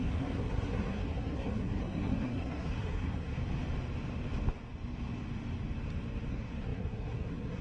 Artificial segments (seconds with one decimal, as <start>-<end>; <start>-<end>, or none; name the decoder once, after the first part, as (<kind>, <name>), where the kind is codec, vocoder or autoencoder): 0.0-3.4 (codec, SNAC); 6.3-7.6